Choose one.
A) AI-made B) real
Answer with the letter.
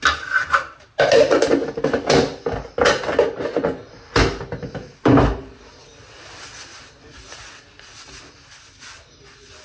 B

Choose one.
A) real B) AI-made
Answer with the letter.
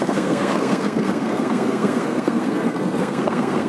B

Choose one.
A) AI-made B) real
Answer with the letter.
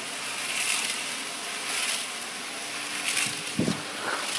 B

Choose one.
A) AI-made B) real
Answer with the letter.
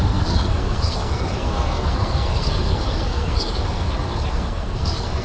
A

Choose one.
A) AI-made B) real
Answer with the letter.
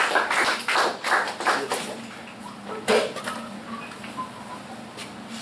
B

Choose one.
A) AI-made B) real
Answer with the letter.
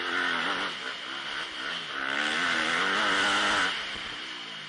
B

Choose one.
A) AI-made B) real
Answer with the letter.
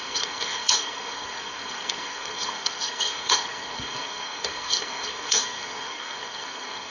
A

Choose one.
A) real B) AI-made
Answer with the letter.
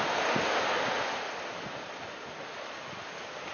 A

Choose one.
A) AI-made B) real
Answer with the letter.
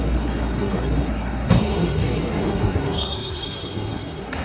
A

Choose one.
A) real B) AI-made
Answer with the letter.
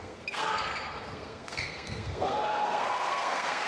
B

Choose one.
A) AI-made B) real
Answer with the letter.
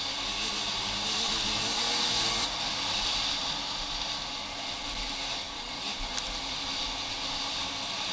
B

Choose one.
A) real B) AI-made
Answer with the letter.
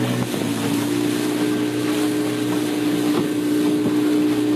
A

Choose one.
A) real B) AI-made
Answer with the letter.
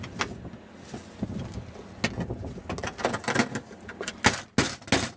A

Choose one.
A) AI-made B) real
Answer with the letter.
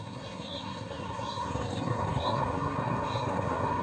A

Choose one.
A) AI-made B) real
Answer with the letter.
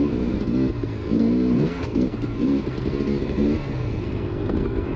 A